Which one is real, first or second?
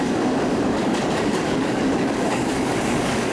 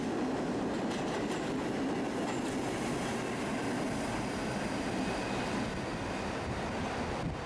second